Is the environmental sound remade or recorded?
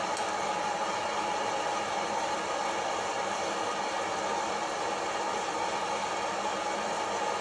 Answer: recorded